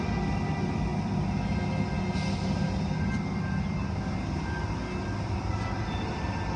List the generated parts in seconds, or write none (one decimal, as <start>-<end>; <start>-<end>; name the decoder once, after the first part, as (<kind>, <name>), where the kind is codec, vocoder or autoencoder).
none